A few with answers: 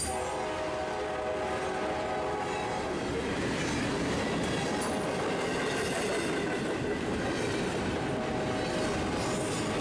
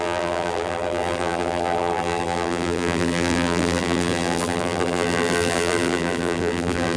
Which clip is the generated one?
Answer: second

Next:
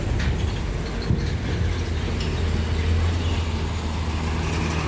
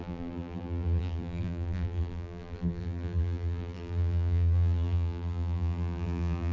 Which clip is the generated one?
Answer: second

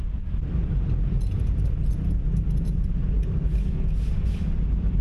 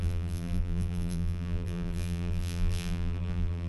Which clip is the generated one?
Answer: second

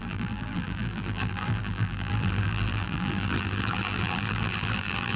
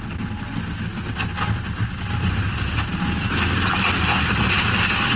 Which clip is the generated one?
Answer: first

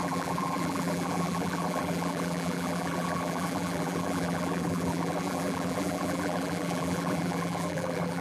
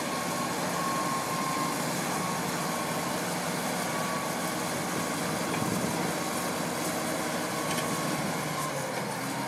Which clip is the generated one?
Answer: first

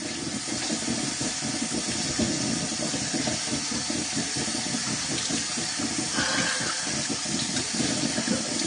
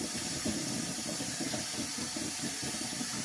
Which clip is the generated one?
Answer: second